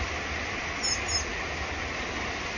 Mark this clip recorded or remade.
recorded